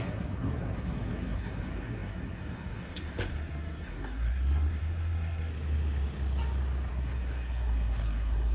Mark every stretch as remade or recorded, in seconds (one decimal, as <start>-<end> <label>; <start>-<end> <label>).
0.0-5.5 remade; 5.5-6.9 recorded; 6.9-8.5 remade